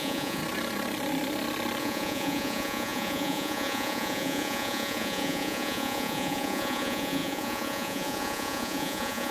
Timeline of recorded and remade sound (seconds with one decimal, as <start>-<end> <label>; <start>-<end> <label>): 0.0-0.4 remade; 0.4-1.8 recorded; 1.8-9.3 remade